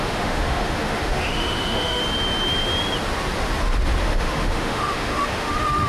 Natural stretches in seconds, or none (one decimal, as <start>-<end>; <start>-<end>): 2.0-4.0